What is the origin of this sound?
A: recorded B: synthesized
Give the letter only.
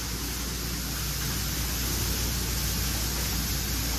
A